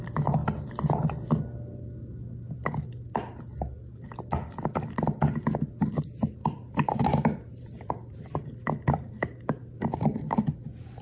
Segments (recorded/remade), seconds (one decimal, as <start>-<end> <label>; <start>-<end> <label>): 0.0-6.4 recorded; 6.4-8.3 remade; 8.3-11.0 recorded